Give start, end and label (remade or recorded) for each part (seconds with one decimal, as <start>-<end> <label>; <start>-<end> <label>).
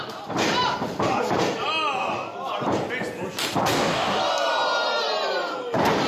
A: 0.0-3.7 recorded; 3.7-4.2 remade; 4.2-6.1 recorded